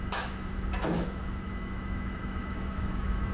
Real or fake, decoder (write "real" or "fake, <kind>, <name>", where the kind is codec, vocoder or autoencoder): fake, autoencoder, DAC-VAE